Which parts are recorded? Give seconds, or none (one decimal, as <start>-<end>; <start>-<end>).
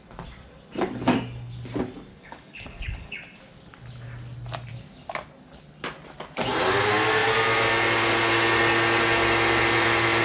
0.0-2.1; 3.1-10.2